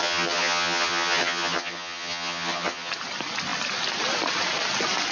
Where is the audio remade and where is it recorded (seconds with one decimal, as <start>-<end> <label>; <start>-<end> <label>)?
0.0-2.9 remade; 2.9-5.1 recorded